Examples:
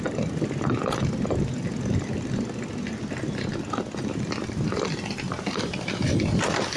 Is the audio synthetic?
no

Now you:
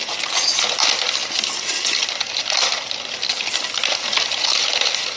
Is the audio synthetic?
no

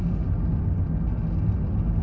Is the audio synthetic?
no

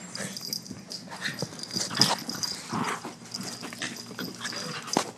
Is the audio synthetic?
no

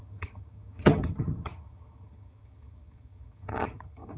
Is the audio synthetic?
yes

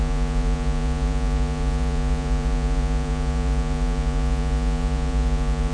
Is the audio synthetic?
yes